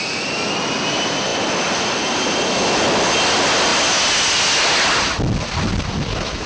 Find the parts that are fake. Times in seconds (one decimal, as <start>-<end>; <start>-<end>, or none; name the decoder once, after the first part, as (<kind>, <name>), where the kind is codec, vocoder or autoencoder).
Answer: none